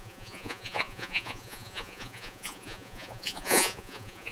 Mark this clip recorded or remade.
remade